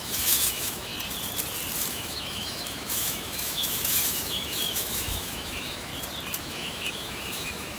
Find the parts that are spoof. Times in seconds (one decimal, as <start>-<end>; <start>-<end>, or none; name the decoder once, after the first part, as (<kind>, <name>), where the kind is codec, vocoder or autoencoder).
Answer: 0.0-0.9 (autoencoder, DAC-VAE); 1.9-5.9; 6.4-7.8